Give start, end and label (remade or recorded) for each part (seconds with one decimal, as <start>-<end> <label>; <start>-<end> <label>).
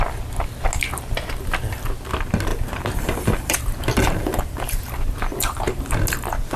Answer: 0.0-2.5 recorded; 2.5-5.8 remade; 5.8-6.6 recorded